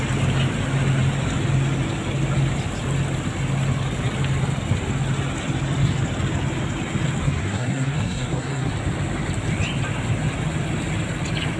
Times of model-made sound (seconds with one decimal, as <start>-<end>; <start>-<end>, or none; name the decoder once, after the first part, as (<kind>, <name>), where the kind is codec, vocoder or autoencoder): 7.2-8.7 (codec, SNAC)